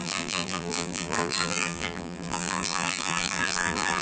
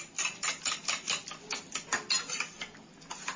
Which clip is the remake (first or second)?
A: first